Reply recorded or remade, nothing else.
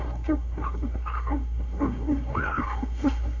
remade